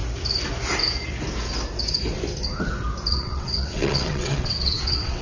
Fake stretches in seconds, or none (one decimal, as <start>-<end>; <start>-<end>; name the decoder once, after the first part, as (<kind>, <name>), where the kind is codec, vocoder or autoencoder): 3.1-5.2 (vocoder, WaveNeXt)